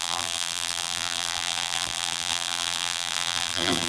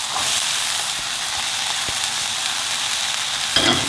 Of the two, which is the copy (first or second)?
first